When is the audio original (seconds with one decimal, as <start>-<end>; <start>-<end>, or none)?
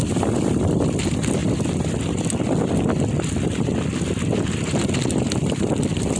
0.0-6.2